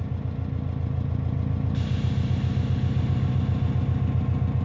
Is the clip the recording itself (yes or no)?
yes